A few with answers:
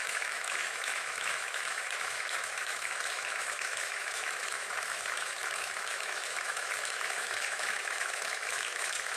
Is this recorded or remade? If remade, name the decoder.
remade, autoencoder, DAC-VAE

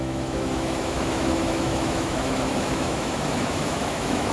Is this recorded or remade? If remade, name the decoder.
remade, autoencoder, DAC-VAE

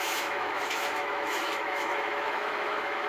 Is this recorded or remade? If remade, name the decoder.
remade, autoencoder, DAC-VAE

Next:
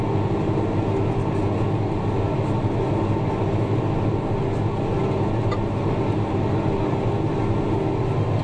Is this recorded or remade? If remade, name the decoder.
recorded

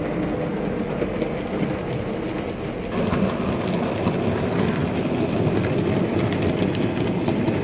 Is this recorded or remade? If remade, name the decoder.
recorded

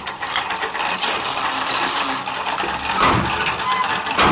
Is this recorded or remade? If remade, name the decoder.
recorded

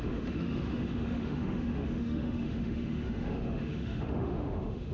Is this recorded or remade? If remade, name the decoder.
remade, autoencoder, DAC-VAE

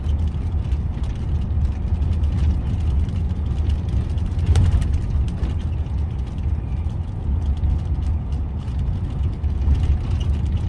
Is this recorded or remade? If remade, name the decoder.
recorded